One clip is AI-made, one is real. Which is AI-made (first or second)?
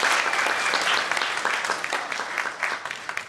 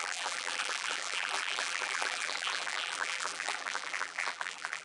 second